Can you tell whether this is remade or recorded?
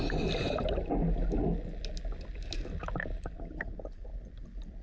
recorded